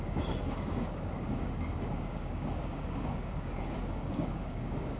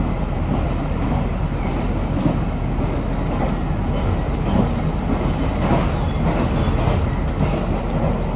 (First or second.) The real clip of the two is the second